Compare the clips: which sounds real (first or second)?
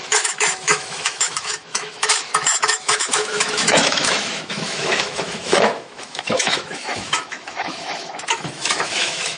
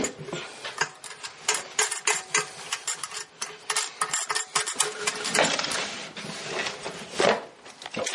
second